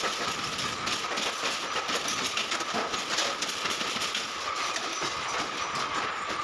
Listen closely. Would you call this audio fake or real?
real